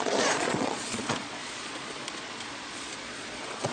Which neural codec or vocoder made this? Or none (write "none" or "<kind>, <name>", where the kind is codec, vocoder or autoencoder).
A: vocoder, Vocos